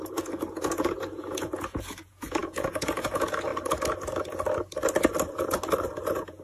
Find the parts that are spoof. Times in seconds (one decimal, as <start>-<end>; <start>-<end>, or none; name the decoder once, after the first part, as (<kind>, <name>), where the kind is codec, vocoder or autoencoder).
0.0-3.5 (vocoder, Vocos); 6.0-6.4